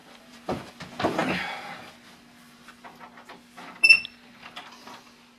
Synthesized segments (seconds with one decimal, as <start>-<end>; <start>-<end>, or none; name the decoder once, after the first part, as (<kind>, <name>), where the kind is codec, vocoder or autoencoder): 0.0-0.7 (vocoder, BigVGAN v2)

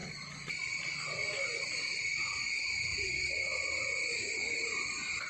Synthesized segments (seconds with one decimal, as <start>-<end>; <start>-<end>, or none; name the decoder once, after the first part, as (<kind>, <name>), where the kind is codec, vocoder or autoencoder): 0.0-0.6 (vocoder, BigVGAN v2); 2.9-3.8

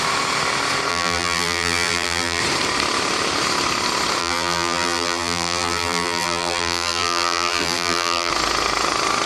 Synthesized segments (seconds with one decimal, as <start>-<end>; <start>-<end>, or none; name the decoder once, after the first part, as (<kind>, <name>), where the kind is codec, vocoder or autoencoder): 0.9-2.4 (vocoder, BigVGAN v2); 4.2-8.3

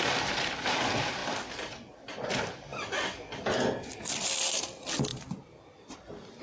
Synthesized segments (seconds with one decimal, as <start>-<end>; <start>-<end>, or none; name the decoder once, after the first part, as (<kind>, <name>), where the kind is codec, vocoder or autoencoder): 1.2-2.1 (vocoder, BigVGAN v2); 2.7-4.4; 5.1-6.4

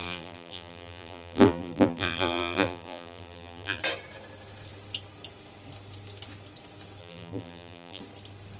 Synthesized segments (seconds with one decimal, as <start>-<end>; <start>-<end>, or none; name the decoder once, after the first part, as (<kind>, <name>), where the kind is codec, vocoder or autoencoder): 0.0-3.8 (vocoder, BigVGAN v2); 7.0-8.0

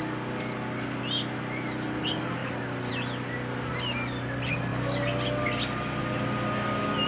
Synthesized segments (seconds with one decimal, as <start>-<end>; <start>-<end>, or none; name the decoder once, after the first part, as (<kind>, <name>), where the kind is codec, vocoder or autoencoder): 0.0-2.4 (vocoder, BigVGAN v2); 2.9-7.1

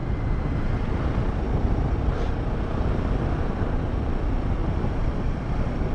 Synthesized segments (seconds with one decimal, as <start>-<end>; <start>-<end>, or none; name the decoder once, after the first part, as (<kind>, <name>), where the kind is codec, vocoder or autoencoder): 0.0-2.3 (vocoder, BigVGAN v2); 4.6-5.4